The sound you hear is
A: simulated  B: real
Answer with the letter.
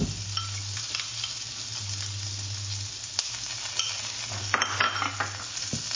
B